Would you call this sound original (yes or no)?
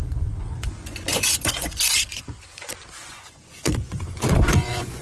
no